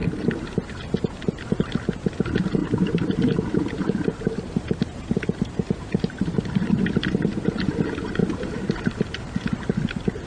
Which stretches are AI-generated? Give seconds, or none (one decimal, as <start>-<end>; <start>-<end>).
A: 2.6-6.8; 8.2-9.0